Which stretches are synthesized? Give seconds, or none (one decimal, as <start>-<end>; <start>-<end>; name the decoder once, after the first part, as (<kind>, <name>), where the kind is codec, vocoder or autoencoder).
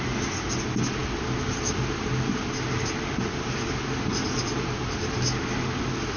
none